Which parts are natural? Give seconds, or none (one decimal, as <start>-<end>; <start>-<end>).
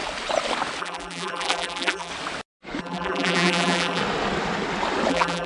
0.0-0.8; 2.1-2.8; 4.0-5.1